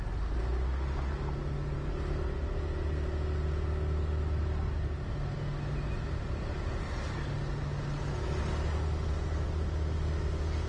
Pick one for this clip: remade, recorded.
recorded